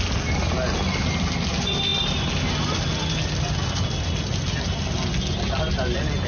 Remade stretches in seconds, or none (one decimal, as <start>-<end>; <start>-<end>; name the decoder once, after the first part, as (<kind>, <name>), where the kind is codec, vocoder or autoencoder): none